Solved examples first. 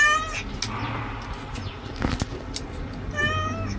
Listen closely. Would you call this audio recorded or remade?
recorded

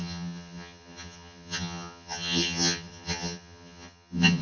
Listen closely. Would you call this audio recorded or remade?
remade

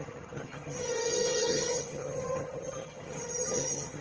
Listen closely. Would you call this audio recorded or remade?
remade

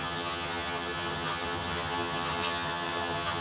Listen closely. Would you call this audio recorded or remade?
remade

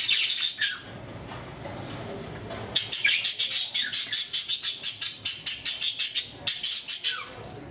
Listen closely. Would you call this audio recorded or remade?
recorded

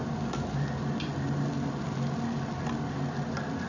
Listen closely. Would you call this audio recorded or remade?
recorded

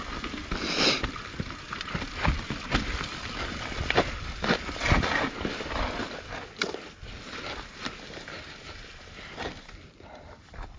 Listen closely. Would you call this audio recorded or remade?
recorded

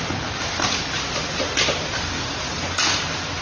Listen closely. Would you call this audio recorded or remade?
recorded